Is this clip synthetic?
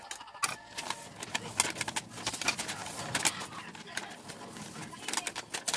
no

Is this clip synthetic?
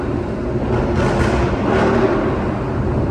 no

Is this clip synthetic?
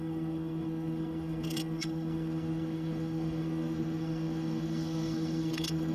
yes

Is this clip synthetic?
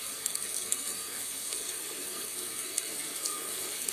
yes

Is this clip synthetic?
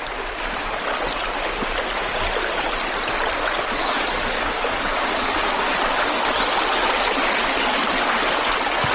no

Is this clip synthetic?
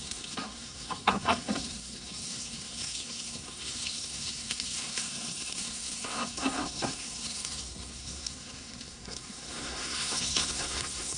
yes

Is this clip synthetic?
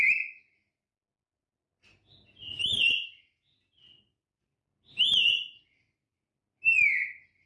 no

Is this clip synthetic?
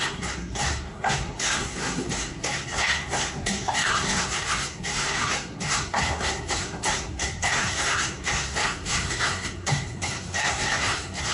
yes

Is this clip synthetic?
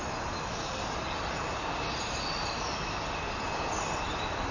no